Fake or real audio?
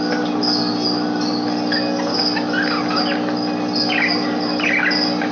real